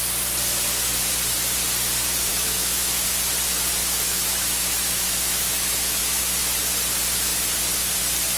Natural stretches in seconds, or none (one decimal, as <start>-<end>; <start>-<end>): 0.0-2.3; 3.1-3.8; 6.2-8.4